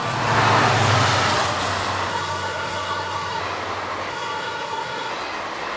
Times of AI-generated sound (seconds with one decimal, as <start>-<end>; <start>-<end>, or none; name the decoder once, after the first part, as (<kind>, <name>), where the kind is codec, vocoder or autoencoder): 2.1-3.4 (codec, SNAC); 4.1-5.1